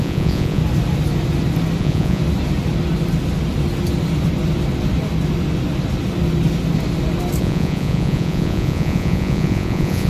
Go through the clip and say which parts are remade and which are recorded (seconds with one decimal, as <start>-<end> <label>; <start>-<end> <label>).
0.0-0.6 remade; 0.6-1.8 recorded; 1.8-2.2 remade; 2.2-7.4 recorded; 7.4-10.1 remade